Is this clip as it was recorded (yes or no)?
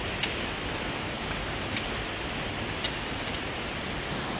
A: yes